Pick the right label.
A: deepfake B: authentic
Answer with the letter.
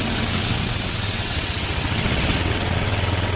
A